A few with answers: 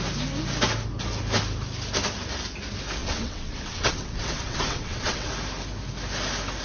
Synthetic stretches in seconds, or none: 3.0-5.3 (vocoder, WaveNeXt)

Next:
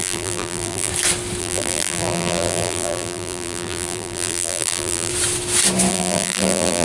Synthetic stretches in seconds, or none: 0.0-0.9 (vocoder, BigVGAN v2); 1.4-5.1; 5.9-6.8

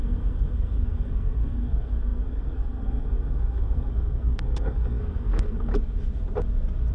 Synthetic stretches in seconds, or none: 0.0-5.7 (codec, SNAC)